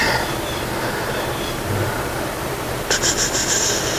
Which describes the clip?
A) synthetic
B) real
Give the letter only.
A